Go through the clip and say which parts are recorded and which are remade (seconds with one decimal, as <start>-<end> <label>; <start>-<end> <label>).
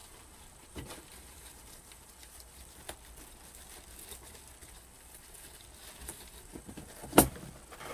0.0-2.6 remade; 2.6-4.6 recorded; 4.6-5.6 remade; 5.6-6.0 recorded; 6.0-7.2 remade; 7.2-7.9 recorded